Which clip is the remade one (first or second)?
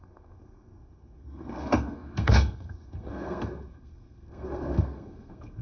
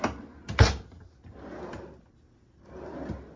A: first